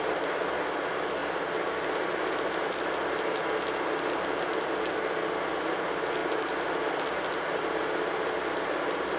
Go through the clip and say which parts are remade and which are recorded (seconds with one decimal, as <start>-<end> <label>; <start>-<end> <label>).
0.0-9.2 recorded